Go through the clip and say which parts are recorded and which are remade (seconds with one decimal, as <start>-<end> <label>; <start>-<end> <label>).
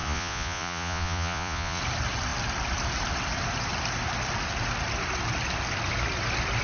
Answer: 0.0-1.8 remade; 1.8-6.6 recorded